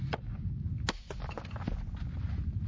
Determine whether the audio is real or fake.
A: real